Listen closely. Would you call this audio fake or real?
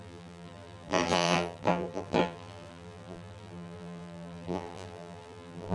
fake